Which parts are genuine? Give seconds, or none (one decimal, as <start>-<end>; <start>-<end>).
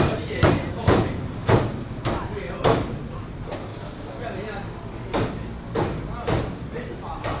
1.4-2.1; 3.7-6.6